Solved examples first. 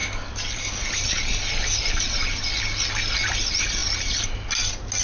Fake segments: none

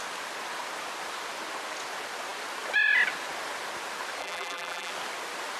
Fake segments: 4.2-4.9 (vocoder, BigVGAN v2)

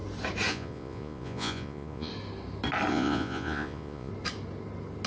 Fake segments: 0.5-2.1 (vocoder, Vocos); 2.9-4.1

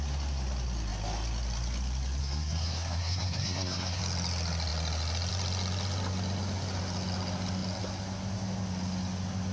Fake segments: 2.2-4.0 (codec, SNAC)

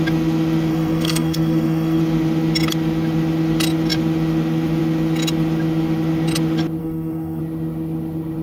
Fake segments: 0.7-2.0 (codec, SNAC); 6.8-7.4

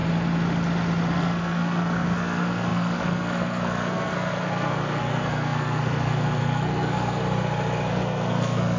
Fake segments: 1.1-7.2 (codec, SNAC); 7.9-8.8

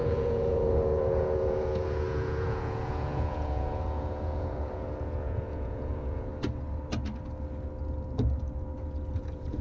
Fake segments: 0.0-6.3 (vocoder, Vocos); 9.2-9.6